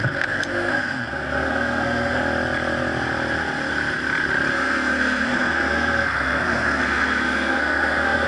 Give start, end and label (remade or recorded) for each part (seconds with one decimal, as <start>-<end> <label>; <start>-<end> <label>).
0.0-2.2 remade; 2.2-4.5 recorded; 4.5-8.3 remade